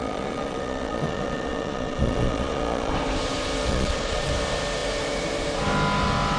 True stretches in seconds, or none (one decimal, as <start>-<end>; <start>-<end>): 2.9-3.7; 4.3-6.4